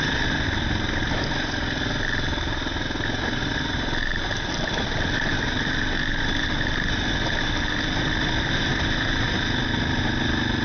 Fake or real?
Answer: real